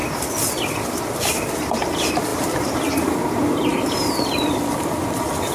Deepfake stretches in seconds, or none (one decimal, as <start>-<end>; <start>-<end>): none